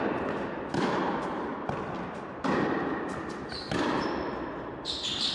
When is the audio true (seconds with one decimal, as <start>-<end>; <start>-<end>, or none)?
0.0-5.3